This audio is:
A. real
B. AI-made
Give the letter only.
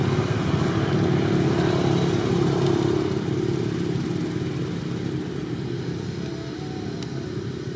A